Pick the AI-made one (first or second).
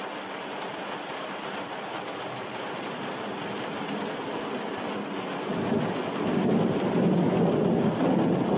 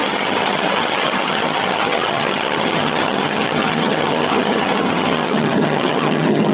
second